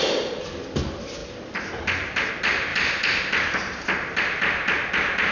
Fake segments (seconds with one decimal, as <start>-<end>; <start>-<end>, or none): none